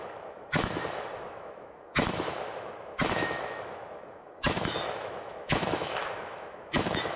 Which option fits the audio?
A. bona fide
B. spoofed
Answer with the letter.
B